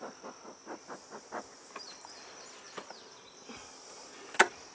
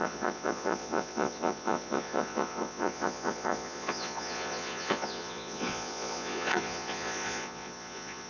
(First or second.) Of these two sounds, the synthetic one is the second